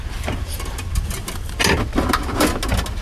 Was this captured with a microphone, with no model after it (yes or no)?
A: yes